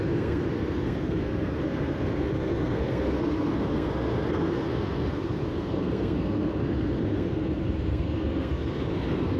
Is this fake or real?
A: fake